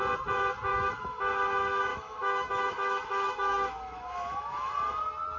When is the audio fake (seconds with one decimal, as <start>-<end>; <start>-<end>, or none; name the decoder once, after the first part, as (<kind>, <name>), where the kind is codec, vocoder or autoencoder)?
0.7-1.2 (autoencoder, DAC-VAE); 1.9-4.7